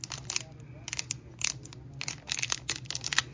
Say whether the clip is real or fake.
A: real